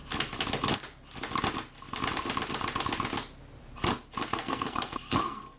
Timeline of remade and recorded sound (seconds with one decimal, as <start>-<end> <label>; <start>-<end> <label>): 0.0-4.3 recorded; 4.3-5.6 remade